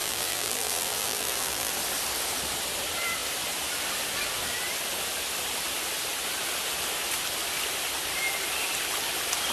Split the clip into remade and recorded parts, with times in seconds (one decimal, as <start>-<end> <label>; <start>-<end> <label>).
0.0-1.7 remade; 1.7-9.5 recorded